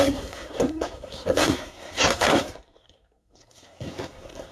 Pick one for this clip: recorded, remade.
remade